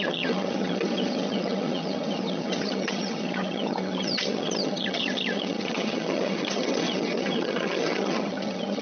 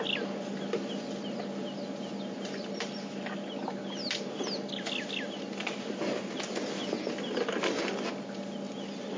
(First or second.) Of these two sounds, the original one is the second